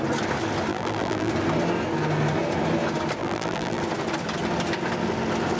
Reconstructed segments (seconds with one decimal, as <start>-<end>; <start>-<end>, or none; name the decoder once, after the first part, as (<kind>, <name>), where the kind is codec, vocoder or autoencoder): 0.7-1.3 (vocoder, BigVGAN v2); 3.2-3.8